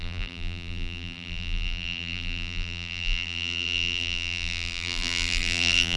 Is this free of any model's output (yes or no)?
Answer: no